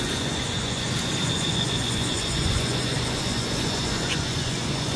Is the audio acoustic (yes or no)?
no